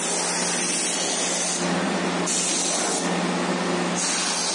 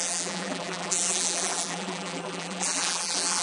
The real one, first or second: first